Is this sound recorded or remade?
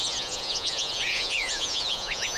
remade